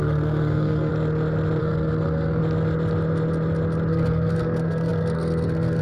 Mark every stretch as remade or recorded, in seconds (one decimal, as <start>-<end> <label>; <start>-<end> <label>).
0.0-0.9 remade; 0.9-1.6 recorded; 1.6-2.4 remade; 2.4-3.9 recorded; 3.9-5.8 remade

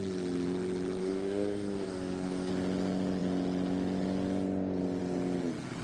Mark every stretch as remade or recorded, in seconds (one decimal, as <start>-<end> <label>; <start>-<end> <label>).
0.0-1.0 recorded; 1.0-2.5 remade; 2.5-5.8 recorded

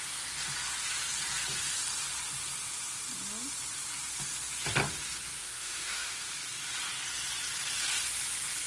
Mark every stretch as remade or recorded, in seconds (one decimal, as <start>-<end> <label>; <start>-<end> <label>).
0.0-5.4 recorded; 5.4-6.3 remade; 6.3-8.7 recorded